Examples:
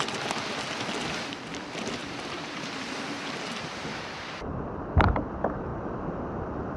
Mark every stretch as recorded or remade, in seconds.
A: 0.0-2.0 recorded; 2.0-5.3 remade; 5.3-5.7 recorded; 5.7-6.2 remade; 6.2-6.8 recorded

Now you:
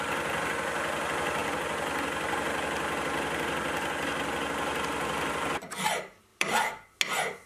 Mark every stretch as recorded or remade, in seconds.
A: 0.0-6.3 recorded; 6.3-7.0 remade; 7.0-7.5 recorded

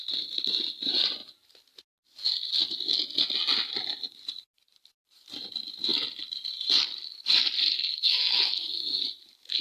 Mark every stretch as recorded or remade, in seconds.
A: 0.0-7.9 recorded; 7.9-9.0 remade; 9.0-9.6 recorded

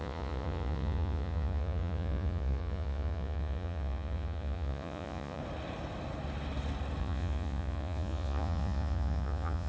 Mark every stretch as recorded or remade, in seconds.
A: 0.0-5.4 remade; 5.4-7.0 recorded; 7.0-9.7 remade

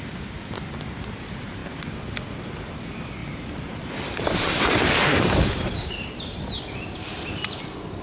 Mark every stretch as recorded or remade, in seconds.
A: 0.0-3.2 recorded; 3.2-6.6 remade; 6.6-8.0 recorded

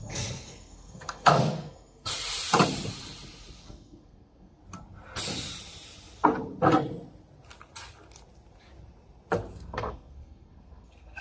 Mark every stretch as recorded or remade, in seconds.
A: 0.0-2.1 remade; 2.1-3.6 recorded; 3.6-4.6 remade; 4.6-9.5 recorded; 9.5-11.2 remade